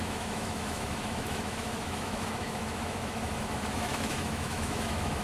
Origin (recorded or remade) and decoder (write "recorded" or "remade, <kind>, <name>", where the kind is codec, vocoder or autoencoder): remade, autoencoder, DAC-VAE